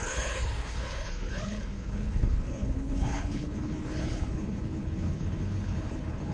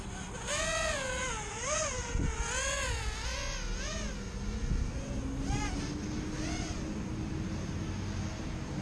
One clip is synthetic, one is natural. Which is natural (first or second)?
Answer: second